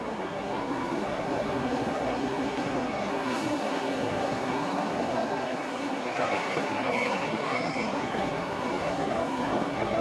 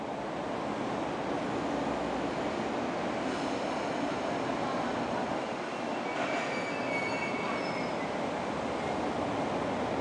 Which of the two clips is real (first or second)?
second